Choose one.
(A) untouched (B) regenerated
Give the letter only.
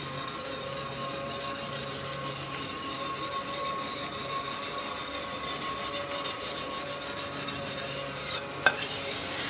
A